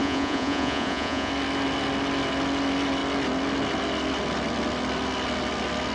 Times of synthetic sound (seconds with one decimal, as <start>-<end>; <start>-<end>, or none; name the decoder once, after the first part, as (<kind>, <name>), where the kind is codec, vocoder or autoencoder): 0.0-1.3 (vocoder, Vocos)